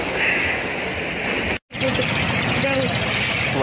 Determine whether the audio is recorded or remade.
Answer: recorded